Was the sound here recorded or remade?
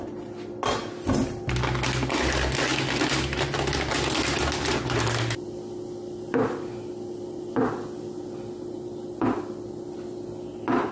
recorded